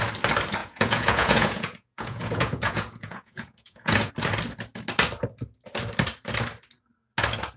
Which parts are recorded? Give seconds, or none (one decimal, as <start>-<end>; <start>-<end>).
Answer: 0.0-0.6; 4.1-7.6